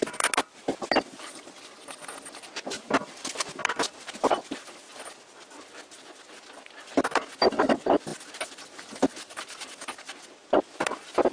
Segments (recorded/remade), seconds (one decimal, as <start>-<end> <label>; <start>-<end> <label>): 0.0-11.3 recorded